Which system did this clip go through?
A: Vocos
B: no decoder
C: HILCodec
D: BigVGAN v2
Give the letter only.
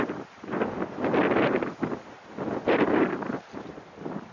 B